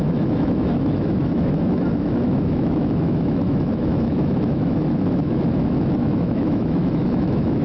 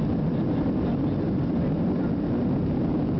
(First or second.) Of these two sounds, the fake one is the first